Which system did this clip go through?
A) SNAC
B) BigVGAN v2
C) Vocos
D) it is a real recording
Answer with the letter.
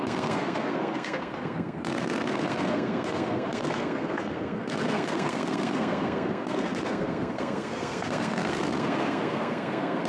A